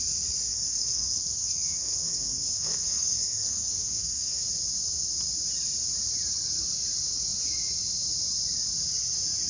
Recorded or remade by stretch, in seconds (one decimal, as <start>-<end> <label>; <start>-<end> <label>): 0.0-0.5 recorded; 0.5-4.5 remade; 4.5-9.5 recorded